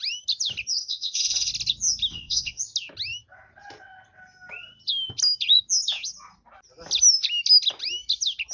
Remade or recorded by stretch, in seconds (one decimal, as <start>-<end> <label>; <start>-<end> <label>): 0.0-0.8 recorded; 0.8-1.5 remade; 1.5-2.1 recorded; 2.1-2.6 remade; 2.6-8.5 recorded